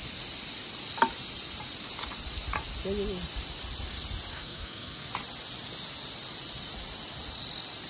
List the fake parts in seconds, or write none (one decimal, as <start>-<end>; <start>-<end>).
4.3-5.1